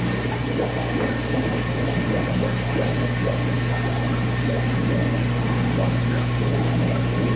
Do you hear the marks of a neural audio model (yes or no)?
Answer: no